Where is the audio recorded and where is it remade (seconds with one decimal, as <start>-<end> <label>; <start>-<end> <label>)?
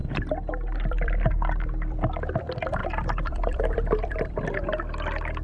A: 0.0-2.4 remade; 2.4-2.8 recorded; 2.8-4.4 remade; 4.4-5.4 recorded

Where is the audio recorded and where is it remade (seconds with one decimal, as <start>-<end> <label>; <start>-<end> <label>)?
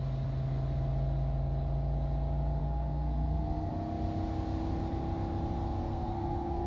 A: 0.0-2.6 recorded; 2.6-3.7 remade; 3.7-5.8 recorded; 5.8-6.7 remade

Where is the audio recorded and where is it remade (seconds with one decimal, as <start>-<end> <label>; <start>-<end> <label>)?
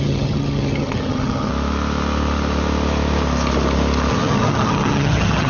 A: 0.0-1.5 remade; 1.5-4.1 recorded; 4.1-5.5 remade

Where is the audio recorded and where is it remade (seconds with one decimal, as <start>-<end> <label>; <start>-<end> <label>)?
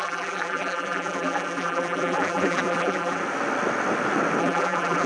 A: 0.0-3.2 remade; 3.2-4.4 recorded; 4.4-5.1 remade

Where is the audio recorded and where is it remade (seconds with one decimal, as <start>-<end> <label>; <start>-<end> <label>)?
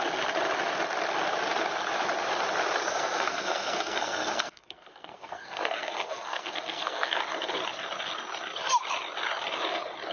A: 0.0-2.9 recorded; 2.9-7.2 remade; 7.2-10.1 recorded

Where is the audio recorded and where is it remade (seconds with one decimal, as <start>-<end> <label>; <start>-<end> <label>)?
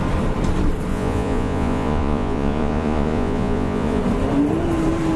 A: 0.0-0.9 recorded; 0.9-4.0 remade; 4.0-5.2 recorded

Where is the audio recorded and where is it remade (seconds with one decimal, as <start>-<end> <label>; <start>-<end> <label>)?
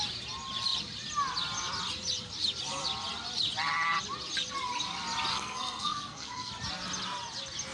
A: 0.0-5.3 recorded; 5.3-6.5 remade; 6.5-7.7 recorded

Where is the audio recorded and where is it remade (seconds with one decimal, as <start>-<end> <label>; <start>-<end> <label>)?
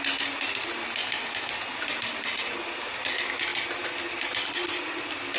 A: 0.0-1.0 recorded; 1.0-1.5 remade; 1.5-5.4 recorded